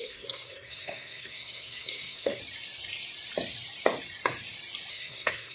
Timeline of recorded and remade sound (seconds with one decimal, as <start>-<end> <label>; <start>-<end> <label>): 0.0-2.4 remade; 2.4-4.9 recorded; 4.9-5.5 remade